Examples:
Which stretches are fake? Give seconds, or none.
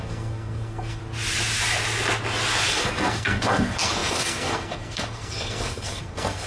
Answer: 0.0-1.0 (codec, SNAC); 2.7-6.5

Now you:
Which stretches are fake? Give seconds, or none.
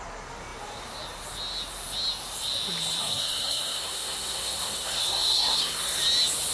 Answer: 3.0-6.0 (codec, SNAC)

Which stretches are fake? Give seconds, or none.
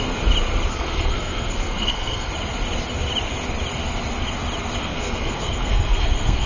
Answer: 0.7-2.3 (codec, SNAC); 4.8-6.5